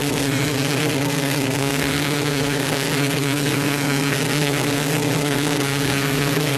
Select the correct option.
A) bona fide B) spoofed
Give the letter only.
B